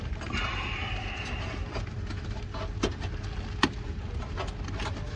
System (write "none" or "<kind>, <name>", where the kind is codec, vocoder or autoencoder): none